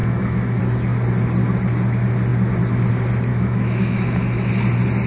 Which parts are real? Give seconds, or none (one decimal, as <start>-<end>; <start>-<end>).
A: 0.6-3.3; 4.5-5.1